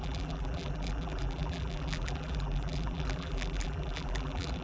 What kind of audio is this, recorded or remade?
remade